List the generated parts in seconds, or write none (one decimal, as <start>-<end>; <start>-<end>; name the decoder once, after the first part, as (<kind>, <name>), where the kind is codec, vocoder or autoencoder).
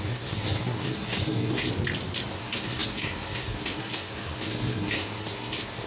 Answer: 0.0-1.7 (codec, SNAC); 2.3-5.9